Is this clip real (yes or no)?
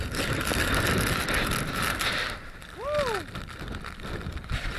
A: yes